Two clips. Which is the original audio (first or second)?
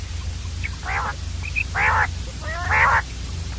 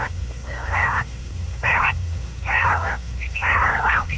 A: first